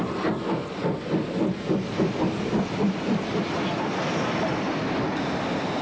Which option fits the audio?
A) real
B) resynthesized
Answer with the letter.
A